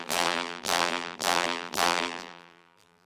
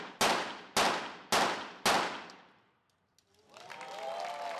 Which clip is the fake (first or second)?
first